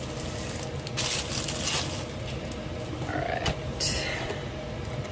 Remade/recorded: recorded